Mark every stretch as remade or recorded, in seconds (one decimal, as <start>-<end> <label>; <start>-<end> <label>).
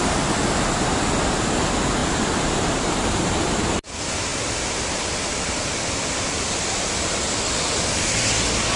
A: 0.0-2.0 recorded; 2.0-3.4 remade; 3.4-8.8 recorded